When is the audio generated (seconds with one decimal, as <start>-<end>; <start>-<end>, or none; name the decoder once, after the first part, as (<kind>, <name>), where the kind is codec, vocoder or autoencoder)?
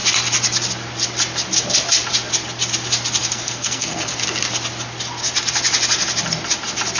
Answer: 3.2-4.1 (codec, SNAC)